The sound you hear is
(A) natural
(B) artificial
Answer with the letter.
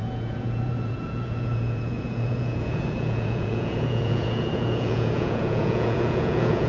B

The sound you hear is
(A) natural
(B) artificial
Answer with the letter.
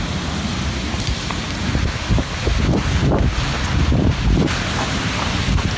A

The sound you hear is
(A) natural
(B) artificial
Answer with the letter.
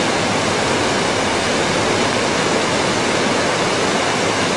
A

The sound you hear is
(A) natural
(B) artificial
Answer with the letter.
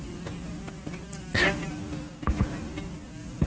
A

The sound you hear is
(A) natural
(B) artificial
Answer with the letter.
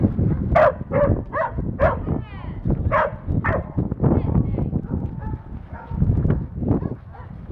A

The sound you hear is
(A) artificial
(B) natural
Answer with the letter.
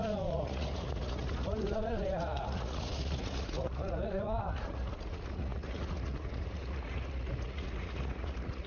A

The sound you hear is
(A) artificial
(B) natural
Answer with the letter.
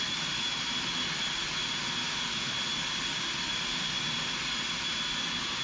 B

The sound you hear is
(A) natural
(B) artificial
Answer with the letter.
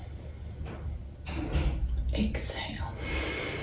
A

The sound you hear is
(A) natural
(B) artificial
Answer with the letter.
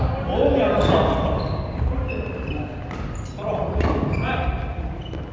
A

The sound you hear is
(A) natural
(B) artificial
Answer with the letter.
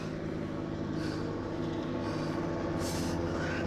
A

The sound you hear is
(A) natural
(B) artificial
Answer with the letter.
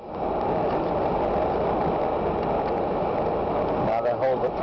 A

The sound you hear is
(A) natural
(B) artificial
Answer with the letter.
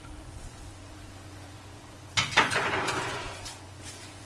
B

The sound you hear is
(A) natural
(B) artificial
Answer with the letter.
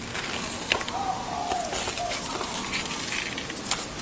A